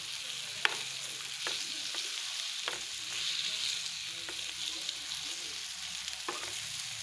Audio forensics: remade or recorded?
recorded